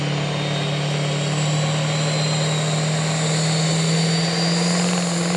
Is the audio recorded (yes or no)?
yes